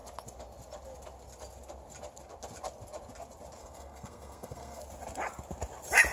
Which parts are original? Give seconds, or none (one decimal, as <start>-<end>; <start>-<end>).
0.0-3.6; 4.8-6.1